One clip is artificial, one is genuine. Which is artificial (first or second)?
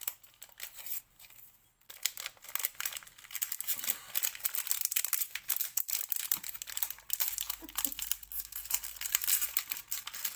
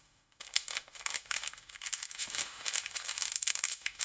second